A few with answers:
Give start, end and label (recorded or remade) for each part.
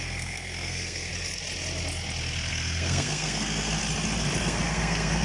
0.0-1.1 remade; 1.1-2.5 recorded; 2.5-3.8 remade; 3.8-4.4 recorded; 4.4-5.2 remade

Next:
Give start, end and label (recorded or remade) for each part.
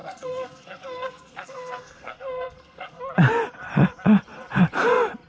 0.0-3.0 remade; 3.0-5.3 recorded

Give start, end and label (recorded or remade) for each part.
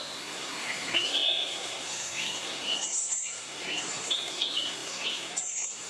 0.0-5.9 remade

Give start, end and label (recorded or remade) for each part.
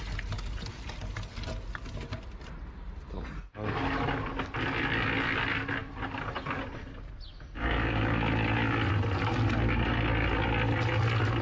0.0-11.4 recorded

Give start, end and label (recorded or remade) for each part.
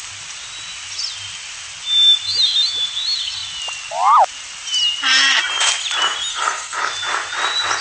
0.0-6.3 recorded; 6.3-6.9 remade; 6.9-7.8 recorded